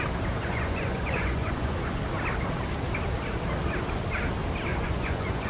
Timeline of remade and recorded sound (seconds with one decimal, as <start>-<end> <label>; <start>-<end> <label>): 0.0-0.4 recorded; 0.4-2.0 remade; 2.0-4.7 recorded; 4.7-5.5 remade